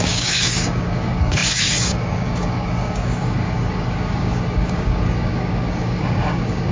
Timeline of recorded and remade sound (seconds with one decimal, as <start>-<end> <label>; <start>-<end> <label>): 0.0-6.7 remade